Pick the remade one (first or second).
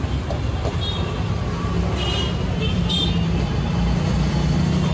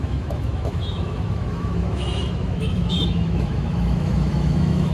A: second